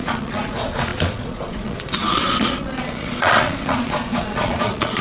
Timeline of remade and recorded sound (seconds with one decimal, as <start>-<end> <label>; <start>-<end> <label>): 0.0-5.0 remade